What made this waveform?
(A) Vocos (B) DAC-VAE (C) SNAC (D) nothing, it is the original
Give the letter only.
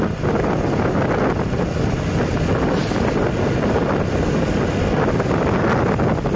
D